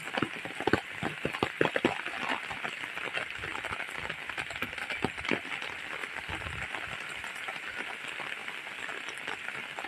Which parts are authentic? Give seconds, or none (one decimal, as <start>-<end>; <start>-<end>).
0.0-9.9